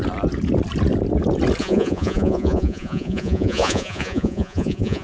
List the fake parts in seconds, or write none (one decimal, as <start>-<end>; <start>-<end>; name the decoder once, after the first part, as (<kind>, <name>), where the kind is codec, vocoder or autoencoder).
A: 1.6-5.0 (vocoder, Vocos)